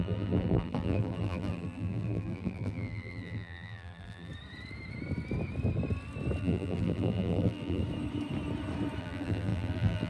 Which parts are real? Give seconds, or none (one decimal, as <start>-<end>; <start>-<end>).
4.3-6.4; 7.8-9.0